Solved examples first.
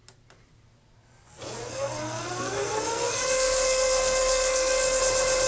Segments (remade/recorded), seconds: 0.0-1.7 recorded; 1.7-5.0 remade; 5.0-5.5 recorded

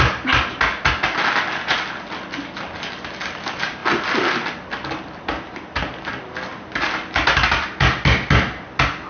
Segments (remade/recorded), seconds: 0.0-9.1 recorded

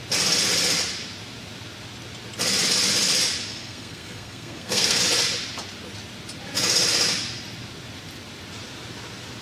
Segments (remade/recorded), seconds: 0.0-3.5 recorded; 3.5-5.0 remade; 5.0-9.4 recorded

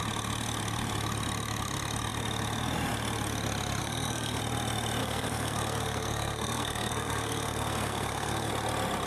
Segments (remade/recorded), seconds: 0.0-3.8 recorded; 3.8-4.4 remade; 4.4-5.0 recorded; 5.0-8.5 remade; 8.5-9.1 recorded

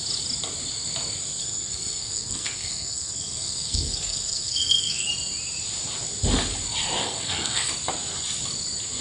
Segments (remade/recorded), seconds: 0.0-1.4 recorded; 1.4-5.1 remade; 5.1-7.0 recorded; 7.0-7.7 remade; 7.7-9.0 recorded

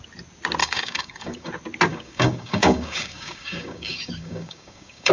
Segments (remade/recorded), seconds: 0.0-0.6 recorded; 0.6-1.5 remade; 1.5-1.9 recorded; 1.9-5.1 remade